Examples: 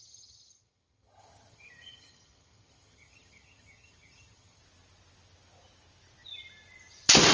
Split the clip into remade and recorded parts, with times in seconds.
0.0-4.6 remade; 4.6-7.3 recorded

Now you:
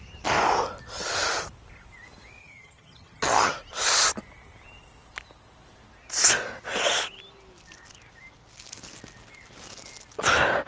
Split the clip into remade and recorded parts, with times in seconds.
0.0-2.4 recorded; 2.4-3.5 remade; 3.5-10.7 recorded

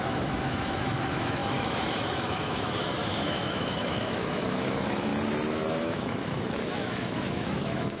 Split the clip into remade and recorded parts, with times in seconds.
0.0-5.1 remade; 5.1-5.8 recorded; 5.8-8.0 remade

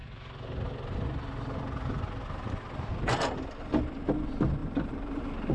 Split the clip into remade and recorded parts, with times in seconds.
0.0-4.6 recorded; 4.6-5.5 remade

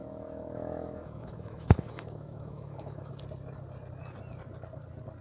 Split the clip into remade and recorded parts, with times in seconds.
0.0-3.1 remade; 3.1-5.2 recorded